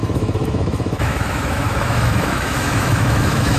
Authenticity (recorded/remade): remade